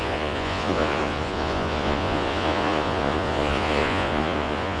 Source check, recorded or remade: remade